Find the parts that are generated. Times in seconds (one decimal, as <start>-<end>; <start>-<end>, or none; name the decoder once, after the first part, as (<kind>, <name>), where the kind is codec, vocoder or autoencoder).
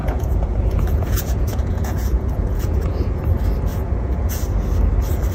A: 0.0-3.2 (vocoder, Vocos); 3.7-4.4